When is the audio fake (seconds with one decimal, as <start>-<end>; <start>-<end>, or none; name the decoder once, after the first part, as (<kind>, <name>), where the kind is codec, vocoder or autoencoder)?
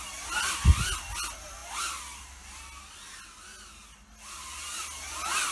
none